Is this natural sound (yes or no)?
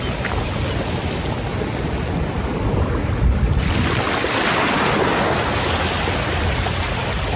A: yes